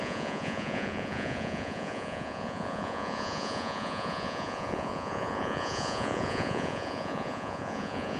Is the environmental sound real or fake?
fake